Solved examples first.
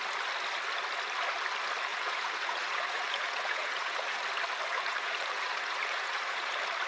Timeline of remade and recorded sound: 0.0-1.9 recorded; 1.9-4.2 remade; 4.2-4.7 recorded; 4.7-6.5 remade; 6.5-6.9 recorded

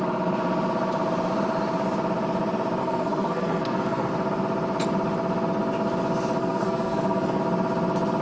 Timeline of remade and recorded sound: 0.0-2.8 recorded; 2.8-4.1 remade; 4.1-6.4 recorded; 6.4-7.4 remade; 7.4-8.2 recorded

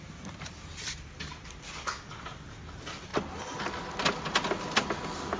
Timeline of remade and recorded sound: 0.0-5.4 recorded

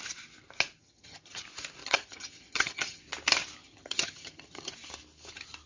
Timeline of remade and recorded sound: 0.0-0.8 recorded; 0.8-1.4 remade; 1.4-1.8 recorded; 1.8-3.0 remade; 3.0-3.6 recorded; 3.6-4.7 remade; 4.7-5.7 recorded

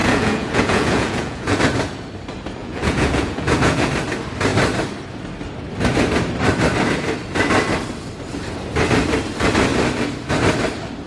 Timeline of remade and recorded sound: 0.0-1.6 remade; 1.6-2.6 recorded; 2.6-3.9 remade; 3.9-11.1 recorded